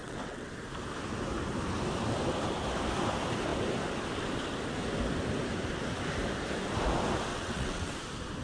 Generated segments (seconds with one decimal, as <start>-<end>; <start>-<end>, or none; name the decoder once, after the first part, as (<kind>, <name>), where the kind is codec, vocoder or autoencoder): 0.0-0.5 (vocoder, WaveNeXt); 7.3-7.9